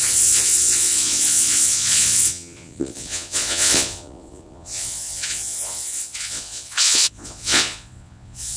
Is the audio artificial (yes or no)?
yes